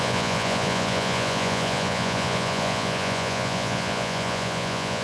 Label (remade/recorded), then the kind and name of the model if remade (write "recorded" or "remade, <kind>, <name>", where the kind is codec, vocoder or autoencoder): remade, vocoder, Vocos